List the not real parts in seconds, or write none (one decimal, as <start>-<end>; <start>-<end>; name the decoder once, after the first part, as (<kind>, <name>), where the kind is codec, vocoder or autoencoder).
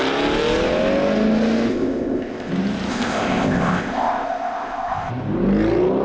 1.7-2.5 (codec, ZipCodec); 2.9-5.1